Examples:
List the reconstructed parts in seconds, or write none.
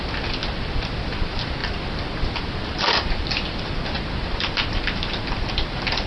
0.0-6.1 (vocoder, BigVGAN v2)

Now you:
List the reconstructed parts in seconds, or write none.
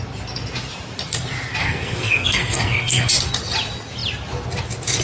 1.6-3.1 (codec, SNAC)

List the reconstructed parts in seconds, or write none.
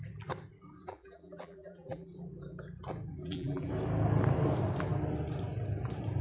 0.8-2.1 (vocoder, BigVGAN v2); 3.2-3.7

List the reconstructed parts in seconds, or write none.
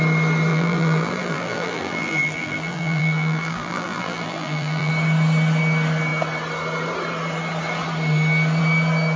0.5-4.9 (vocoder, BigVGAN v2)